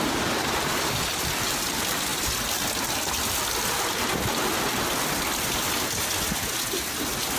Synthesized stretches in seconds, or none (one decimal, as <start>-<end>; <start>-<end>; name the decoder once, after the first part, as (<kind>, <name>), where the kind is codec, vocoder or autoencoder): none